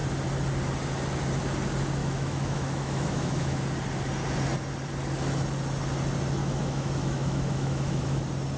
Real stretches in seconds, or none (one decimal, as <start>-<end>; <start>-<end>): 0.0-2.0; 3.6-6.4; 8.2-8.6

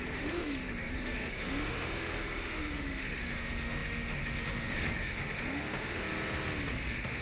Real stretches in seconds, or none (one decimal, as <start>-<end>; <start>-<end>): 6.0-6.7

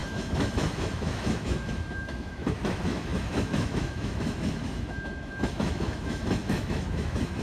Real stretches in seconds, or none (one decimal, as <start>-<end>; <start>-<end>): none

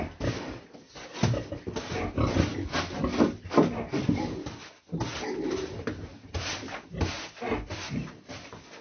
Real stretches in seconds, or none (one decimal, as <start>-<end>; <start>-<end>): 0.0-8.8

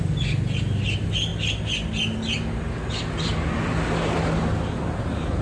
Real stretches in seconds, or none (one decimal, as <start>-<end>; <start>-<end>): 0.0-5.4

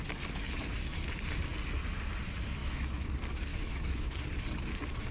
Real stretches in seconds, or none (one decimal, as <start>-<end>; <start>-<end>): 0.0-2.6; 3.1-3.5; 4.2-5.1